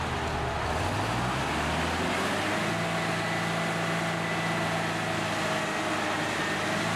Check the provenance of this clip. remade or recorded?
recorded